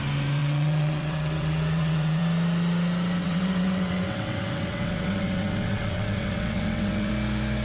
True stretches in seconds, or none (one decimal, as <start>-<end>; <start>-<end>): 0.0-0.4; 2.2-3.2; 7.1-7.6